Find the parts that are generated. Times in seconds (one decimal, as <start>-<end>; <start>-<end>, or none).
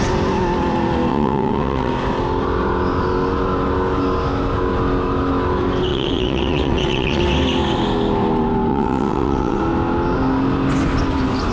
1.1-1.9; 5.9-7.2; 8.7-9.6